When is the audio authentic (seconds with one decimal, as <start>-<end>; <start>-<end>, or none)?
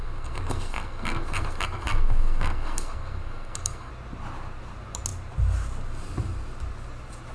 3.9-7.3